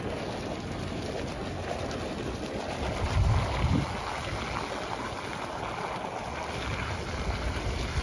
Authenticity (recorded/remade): recorded